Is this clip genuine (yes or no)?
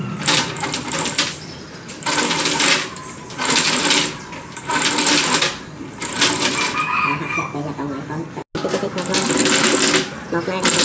yes